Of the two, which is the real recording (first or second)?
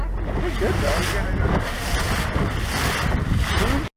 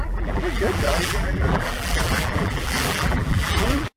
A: first